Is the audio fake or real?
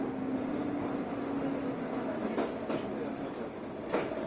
real